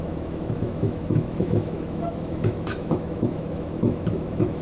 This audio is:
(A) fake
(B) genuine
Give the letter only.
A